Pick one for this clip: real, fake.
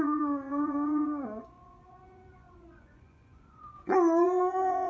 fake